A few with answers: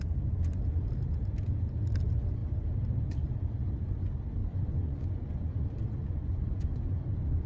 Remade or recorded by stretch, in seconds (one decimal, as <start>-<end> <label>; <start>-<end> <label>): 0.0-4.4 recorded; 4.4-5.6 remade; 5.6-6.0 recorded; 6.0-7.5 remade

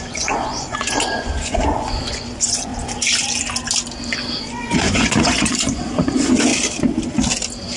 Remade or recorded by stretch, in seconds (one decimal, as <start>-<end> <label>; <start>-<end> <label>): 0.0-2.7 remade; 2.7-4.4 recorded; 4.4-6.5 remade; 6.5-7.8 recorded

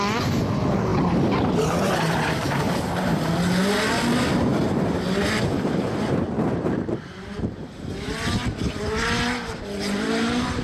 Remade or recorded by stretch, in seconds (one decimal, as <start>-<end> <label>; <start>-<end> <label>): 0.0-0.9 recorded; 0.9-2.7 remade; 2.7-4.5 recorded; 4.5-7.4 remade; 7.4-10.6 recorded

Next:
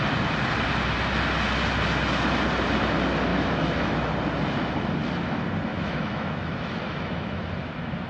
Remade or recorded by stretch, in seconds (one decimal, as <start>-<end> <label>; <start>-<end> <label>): 0.0-3.3 recorded; 3.3-4.1 remade; 4.1-5.7 recorded; 5.7-7.4 remade; 7.4-8.1 recorded

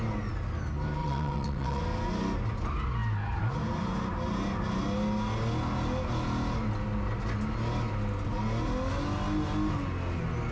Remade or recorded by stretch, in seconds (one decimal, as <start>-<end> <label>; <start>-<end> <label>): 0.0-1.0 recorded; 1.0-1.8 remade; 1.8-10.5 recorded

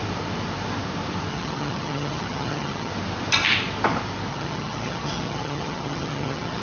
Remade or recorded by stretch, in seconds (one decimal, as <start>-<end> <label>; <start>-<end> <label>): 0.0-1.3 recorded; 1.3-2.9 remade; 2.9-4.3 recorded; 4.3-6.6 remade